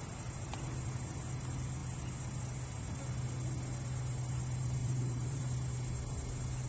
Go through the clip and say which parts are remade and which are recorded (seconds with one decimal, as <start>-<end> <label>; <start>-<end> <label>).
0.0-4.8 recorded; 4.8-5.4 remade; 5.4-6.7 recorded